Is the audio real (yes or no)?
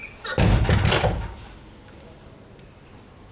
yes